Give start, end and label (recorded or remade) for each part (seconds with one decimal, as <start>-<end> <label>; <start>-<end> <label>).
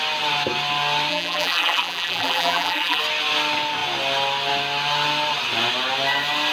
0.0-1.1 recorded; 1.1-3.0 remade; 3.0-6.5 recorded